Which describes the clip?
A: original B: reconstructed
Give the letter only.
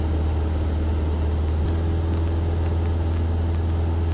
A